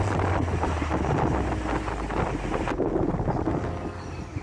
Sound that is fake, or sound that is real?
real